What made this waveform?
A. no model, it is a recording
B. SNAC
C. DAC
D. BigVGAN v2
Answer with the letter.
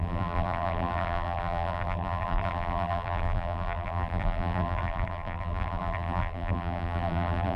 D